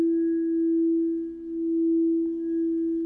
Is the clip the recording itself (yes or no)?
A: yes